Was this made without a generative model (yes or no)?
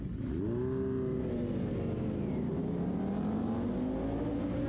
yes